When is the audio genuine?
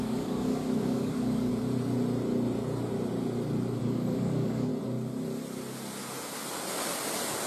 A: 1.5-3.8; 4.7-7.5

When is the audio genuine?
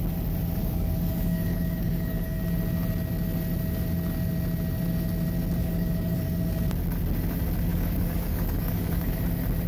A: 0.0-0.6; 2.4-5.6; 6.2-7.7; 9.2-9.7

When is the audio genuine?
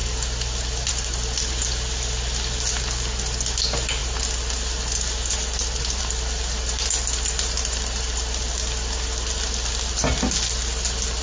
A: 0.0-11.2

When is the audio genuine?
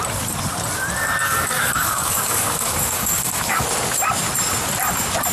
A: 0.0-1.0; 3.6-5.3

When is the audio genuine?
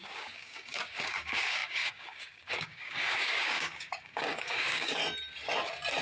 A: 5.0-6.0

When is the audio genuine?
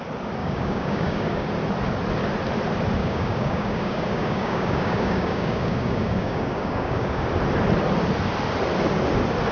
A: 0.0-0.4; 1.5-3.0; 7.2-9.5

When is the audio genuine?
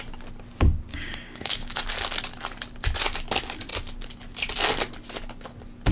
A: 0.0-0.9; 1.8-5.9